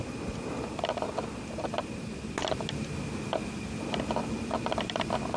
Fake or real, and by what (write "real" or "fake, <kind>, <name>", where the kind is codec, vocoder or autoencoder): real